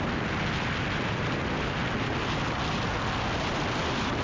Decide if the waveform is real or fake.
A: real